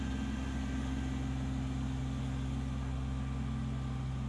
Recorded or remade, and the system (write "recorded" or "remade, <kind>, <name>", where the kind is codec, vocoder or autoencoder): recorded